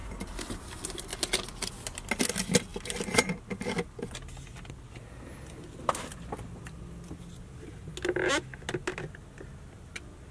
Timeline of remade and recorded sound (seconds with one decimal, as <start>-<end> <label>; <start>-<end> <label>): 0.0-0.5 remade; 0.5-10.3 recorded